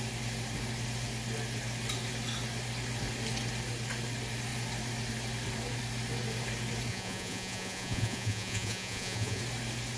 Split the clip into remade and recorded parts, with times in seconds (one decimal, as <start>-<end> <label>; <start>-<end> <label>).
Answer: 0.0-6.9 recorded; 6.9-9.4 remade; 9.4-10.0 recorded